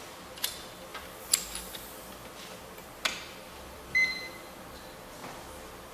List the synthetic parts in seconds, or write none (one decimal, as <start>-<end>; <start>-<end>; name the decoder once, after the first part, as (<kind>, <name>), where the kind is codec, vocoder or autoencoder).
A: 0.9-4.4 (vocoder, BigVGAN v2)